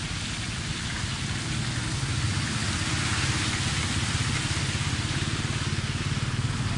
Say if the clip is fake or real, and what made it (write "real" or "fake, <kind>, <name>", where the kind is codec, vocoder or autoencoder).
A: real